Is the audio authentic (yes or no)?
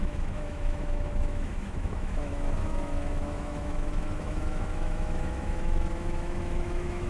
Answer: no